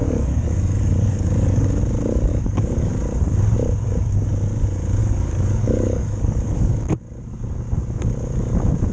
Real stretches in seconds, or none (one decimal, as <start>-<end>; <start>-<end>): 1.8-2.3; 2.9-5.0; 6.9-8.9